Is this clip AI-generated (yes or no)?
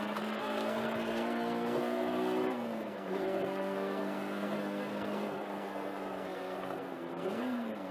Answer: yes